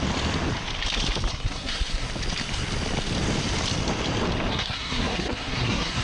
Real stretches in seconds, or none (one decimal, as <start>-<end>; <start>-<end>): 0.0-1.3; 2.1-4.5